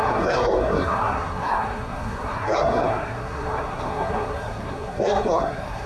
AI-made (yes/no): yes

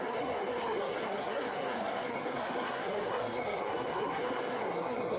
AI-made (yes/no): yes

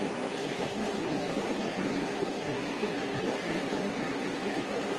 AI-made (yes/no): yes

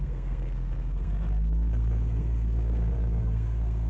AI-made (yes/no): yes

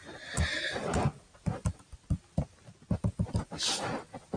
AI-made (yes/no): no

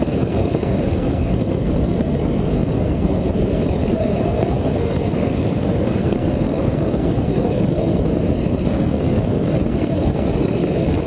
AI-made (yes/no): yes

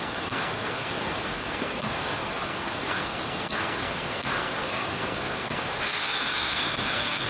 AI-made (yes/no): yes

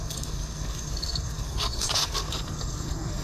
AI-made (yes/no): yes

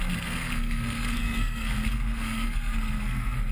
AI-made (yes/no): yes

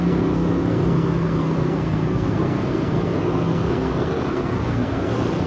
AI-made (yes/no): yes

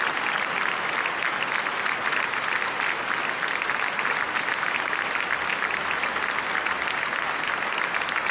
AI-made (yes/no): no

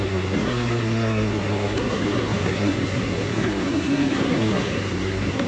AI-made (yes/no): yes